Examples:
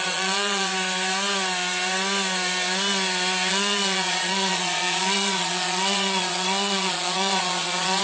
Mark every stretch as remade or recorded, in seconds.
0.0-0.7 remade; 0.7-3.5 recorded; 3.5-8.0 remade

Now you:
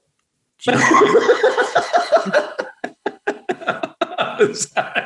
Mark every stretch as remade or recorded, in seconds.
0.0-0.7 recorded; 0.7-3.8 remade; 3.8-4.3 recorded; 4.3-5.1 remade

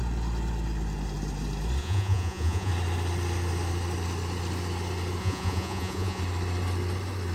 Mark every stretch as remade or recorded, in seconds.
0.0-1.8 recorded; 1.8-2.7 remade; 2.7-5.2 recorded; 5.2-6.2 remade; 6.2-7.3 recorded

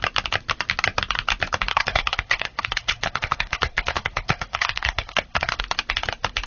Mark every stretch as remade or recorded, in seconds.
0.0-1.7 recorded; 1.7-5.6 remade; 5.6-6.5 recorded